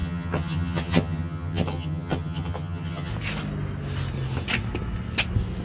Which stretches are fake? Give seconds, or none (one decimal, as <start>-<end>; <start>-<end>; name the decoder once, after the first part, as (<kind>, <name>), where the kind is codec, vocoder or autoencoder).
0.0-3.1 (vocoder, HiFi-GAN)